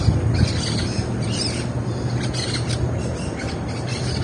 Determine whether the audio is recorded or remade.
recorded